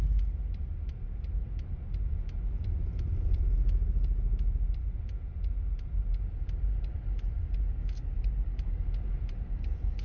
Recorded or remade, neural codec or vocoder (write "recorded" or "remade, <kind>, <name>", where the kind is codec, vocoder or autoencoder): recorded